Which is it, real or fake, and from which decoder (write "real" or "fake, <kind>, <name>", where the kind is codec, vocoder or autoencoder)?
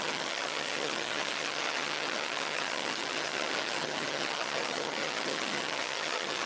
fake, vocoder, HiFi-GAN